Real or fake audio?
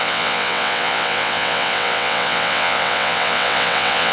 fake